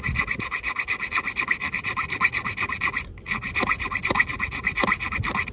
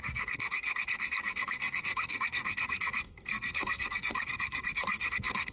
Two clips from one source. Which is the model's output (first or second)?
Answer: second